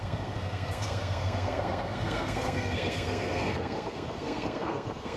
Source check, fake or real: fake